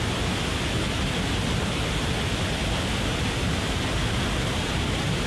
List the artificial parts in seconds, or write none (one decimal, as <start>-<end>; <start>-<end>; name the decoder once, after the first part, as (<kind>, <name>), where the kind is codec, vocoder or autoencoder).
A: none